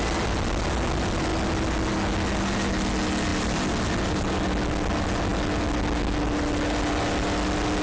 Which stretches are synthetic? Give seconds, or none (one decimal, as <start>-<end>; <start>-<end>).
none